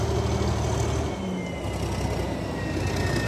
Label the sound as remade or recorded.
recorded